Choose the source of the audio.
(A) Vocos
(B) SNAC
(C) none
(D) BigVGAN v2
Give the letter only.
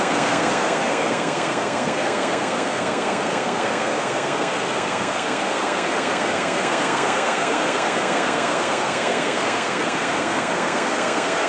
B